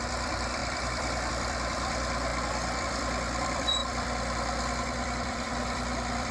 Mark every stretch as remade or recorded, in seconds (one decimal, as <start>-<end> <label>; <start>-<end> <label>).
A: 0.0-2.3 remade; 2.3-2.8 recorded; 2.8-6.3 remade